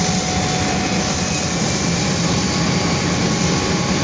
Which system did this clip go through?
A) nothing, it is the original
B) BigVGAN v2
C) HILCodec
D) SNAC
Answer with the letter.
A